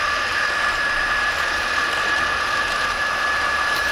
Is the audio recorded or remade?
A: remade